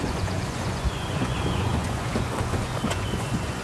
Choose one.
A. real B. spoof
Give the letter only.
B